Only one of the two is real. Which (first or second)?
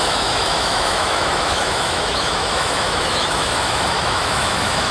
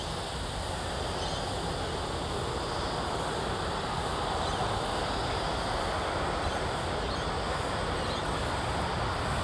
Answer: second